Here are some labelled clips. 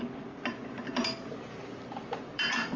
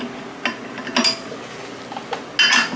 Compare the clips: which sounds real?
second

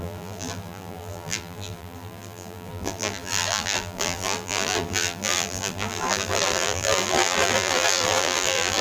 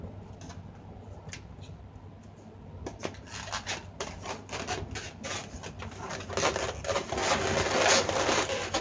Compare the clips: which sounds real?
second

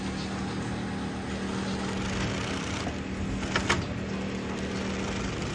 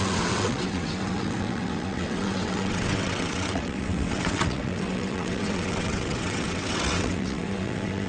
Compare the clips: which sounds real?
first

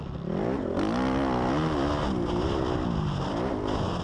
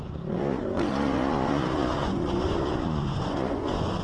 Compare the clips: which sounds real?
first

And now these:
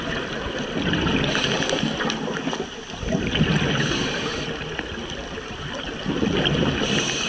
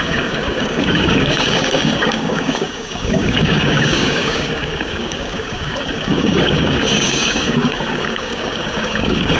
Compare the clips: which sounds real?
first